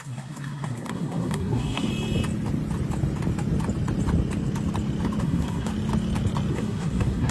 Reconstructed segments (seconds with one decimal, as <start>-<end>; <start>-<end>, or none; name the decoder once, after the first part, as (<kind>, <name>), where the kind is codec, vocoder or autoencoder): 0.0-1.9 (codec, SNAC); 5.2-5.7; 6.5-7.3